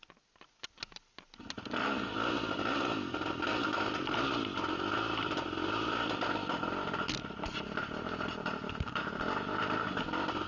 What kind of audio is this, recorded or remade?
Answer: recorded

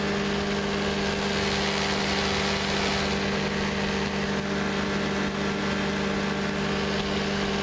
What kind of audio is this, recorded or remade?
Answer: recorded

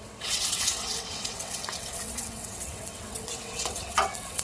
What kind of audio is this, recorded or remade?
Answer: remade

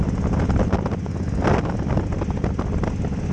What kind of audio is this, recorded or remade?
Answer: recorded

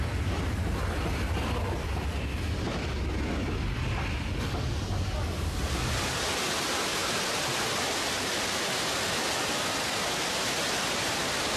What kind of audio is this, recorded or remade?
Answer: recorded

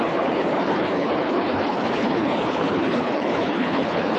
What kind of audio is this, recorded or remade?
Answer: remade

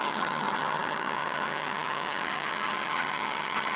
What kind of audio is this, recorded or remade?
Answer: remade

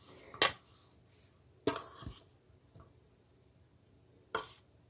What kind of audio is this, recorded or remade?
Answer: recorded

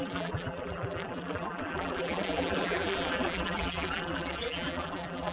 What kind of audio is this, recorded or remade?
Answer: remade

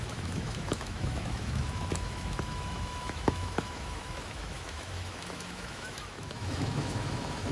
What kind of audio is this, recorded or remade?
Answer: remade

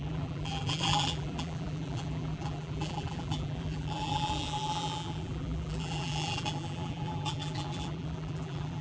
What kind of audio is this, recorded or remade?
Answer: remade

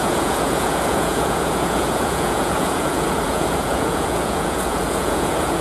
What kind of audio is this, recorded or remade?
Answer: remade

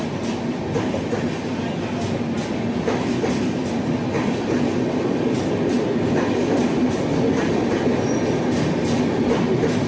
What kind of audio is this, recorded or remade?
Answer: recorded